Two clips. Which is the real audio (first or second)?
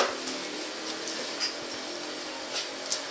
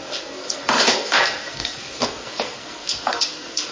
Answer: first